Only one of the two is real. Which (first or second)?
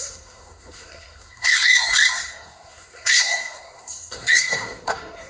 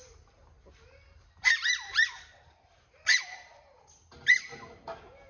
second